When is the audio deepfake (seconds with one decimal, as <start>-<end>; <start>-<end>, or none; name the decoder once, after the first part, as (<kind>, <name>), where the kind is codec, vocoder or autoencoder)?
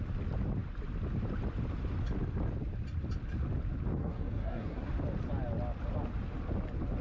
4.0-4.9 (codec, SNAC)